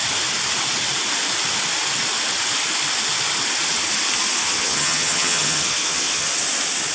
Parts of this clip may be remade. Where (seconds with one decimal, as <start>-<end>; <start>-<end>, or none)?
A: 4.4-6.3